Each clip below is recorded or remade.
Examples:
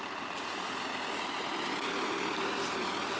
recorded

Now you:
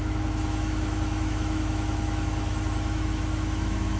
remade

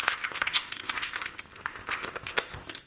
remade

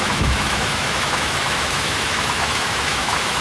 remade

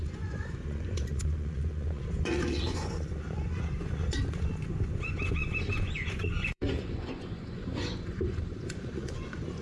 remade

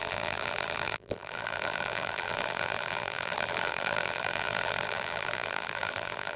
remade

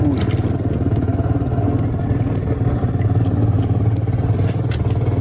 recorded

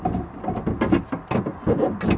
recorded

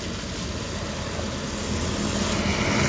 recorded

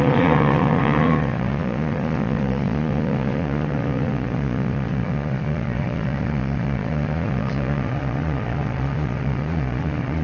remade